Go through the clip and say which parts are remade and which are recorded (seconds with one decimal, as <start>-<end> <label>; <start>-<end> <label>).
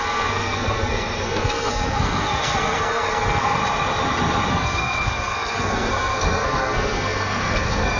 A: 0.0-3.6 remade; 3.6-4.5 recorded; 4.5-8.0 remade